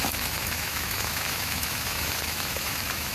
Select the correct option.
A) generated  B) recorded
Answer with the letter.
A